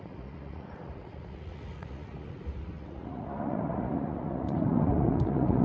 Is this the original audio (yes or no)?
no